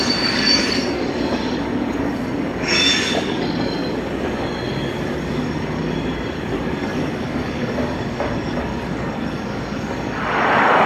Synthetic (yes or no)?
yes